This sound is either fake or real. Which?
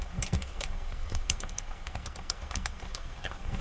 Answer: fake